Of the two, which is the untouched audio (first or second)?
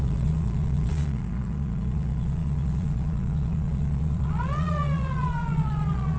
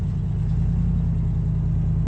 second